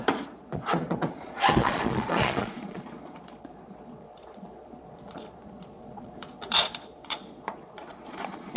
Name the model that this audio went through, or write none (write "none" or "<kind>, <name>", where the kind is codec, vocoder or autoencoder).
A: vocoder, Vocos